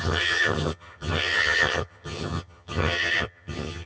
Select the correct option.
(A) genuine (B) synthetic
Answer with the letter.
B